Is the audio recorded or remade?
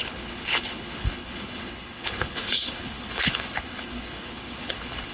remade